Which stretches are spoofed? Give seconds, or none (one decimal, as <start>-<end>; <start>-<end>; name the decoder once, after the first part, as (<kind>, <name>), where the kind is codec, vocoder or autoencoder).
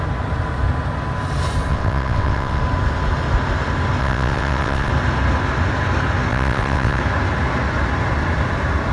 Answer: 1.7-2.6 (vocoder, WaveNeXt); 4.0-4.9; 6.3-7.0